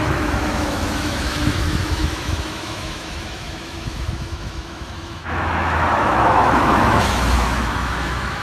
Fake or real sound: fake